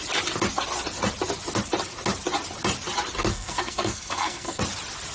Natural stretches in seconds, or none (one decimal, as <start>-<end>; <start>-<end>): 0.0-3.3; 4.6-5.1